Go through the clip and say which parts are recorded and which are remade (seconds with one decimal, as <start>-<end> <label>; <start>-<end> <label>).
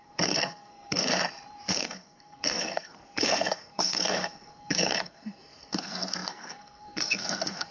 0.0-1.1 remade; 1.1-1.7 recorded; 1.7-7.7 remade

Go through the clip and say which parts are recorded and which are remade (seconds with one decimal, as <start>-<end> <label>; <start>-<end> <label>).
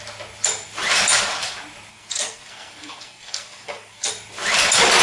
0.0-1.9 recorded; 1.9-4.1 remade; 4.1-5.0 recorded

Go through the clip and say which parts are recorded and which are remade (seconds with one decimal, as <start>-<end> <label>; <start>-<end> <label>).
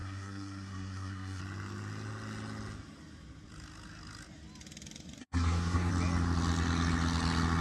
0.0-1.4 remade; 1.4-5.2 recorded; 5.2-5.9 remade; 5.9-7.6 recorded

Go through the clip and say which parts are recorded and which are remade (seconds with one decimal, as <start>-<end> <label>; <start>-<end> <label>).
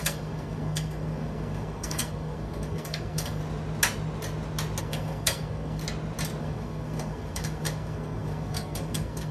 0.0-3.4 remade; 3.4-4.8 recorded; 4.8-5.8 remade; 5.8-6.4 recorded; 6.4-9.3 remade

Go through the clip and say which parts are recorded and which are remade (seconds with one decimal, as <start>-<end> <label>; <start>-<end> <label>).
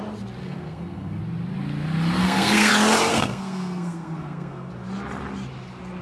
0.0-0.4 recorded; 0.4-1.2 remade; 1.2-2.2 recorded; 2.2-2.7 remade; 2.7-3.1 recorded; 3.1-4.7 remade; 4.7-6.0 recorded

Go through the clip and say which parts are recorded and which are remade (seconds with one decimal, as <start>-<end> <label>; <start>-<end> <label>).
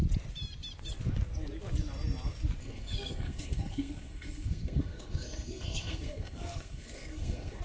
0.0-2.6 recorded; 2.6-7.6 remade